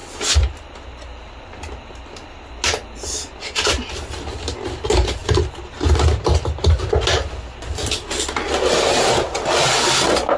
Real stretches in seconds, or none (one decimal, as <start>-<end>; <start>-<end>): 0.0-10.4